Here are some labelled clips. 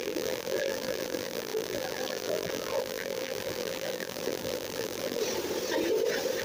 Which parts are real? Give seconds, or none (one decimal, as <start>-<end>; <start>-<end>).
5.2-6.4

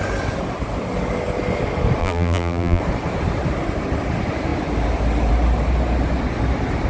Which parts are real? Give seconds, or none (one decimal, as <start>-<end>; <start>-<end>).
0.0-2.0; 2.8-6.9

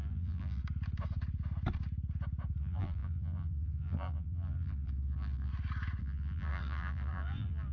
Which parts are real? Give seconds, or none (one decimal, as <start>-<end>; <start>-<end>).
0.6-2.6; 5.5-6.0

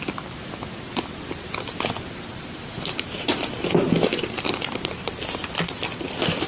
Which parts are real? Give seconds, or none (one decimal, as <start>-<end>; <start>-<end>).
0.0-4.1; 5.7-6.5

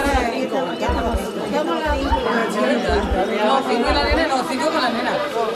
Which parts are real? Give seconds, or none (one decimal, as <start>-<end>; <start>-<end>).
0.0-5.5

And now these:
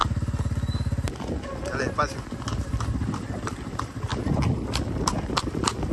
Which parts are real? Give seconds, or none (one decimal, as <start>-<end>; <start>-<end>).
0.0-2.5; 4.1-5.3